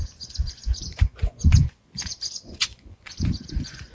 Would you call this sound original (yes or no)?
no